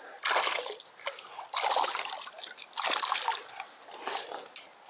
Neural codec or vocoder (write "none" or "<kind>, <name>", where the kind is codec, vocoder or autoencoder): none